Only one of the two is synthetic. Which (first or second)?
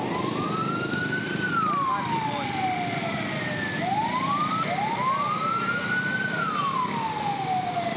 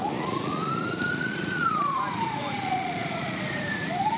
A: second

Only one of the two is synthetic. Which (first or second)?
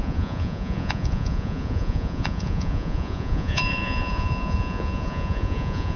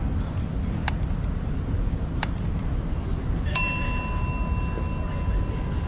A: first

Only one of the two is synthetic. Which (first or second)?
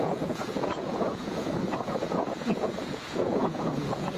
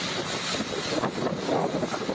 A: first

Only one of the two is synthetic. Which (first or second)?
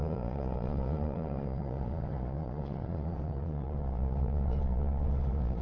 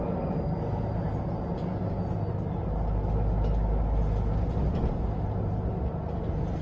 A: first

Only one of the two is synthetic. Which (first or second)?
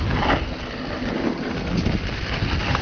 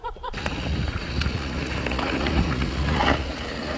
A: second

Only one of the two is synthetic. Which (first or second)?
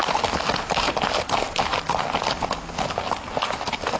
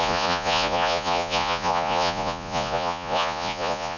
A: second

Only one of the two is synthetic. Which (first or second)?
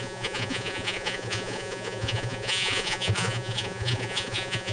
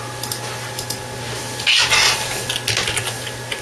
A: first